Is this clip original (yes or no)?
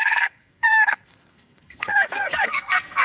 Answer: no